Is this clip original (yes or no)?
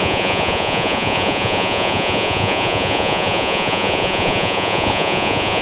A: no